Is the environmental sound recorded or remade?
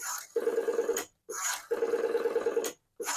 remade